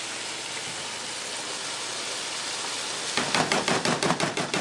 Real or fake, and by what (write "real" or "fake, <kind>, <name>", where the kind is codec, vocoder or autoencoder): real